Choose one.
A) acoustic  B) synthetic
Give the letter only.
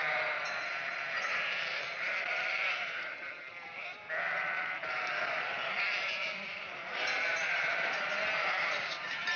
B